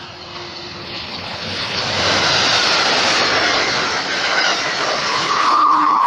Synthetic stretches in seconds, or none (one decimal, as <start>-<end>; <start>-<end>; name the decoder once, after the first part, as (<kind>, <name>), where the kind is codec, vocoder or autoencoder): 0.8-1.8 (codec, HILCodec); 5.0-6.1